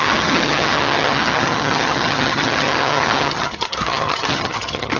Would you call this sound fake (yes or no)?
yes